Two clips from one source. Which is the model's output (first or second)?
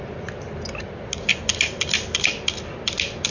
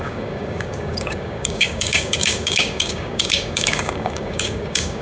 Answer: second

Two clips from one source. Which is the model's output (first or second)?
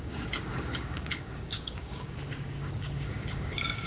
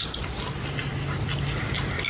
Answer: first